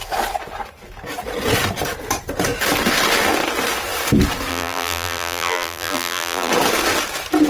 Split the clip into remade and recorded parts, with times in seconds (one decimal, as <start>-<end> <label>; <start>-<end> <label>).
0.0-4.5 recorded; 4.5-6.5 remade; 6.5-7.5 recorded